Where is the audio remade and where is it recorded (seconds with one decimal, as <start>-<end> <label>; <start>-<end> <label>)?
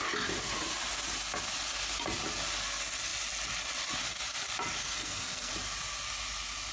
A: 0.0-4.8 recorded; 4.8-5.5 remade; 5.5-6.7 recorded